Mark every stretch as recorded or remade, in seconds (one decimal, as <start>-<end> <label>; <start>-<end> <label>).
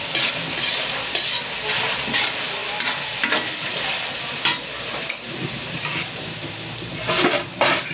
0.0-2.6 remade; 2.6-5.5 recorded; 5.5-7.9 remade